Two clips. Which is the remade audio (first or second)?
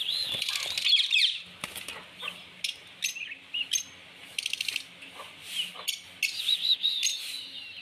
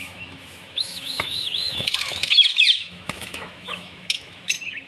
second